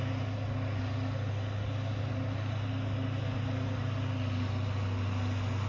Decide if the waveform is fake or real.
real